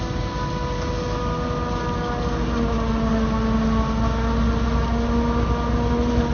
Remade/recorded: recorded